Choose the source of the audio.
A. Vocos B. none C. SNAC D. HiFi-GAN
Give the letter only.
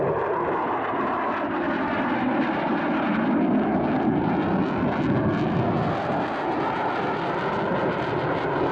B